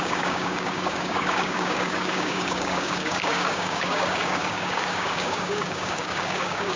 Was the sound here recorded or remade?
remade